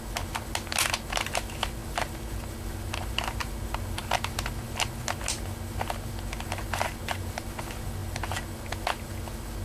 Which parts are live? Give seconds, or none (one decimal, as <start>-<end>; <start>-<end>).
0.0-9.6